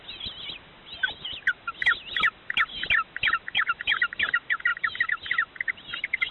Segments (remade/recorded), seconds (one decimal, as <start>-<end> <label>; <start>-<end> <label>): 0.0-6.3 recorded